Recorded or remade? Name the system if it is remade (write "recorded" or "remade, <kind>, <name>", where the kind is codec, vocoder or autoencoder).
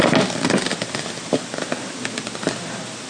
recorded